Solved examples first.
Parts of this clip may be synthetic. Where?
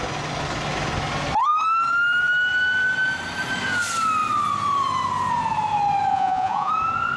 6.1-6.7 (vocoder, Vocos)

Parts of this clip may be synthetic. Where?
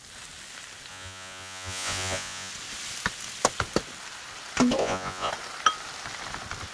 0.9-2.5 (vocoder, Vocos); 4.8-5.3